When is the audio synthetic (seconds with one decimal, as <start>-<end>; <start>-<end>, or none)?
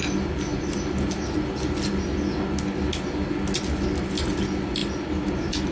none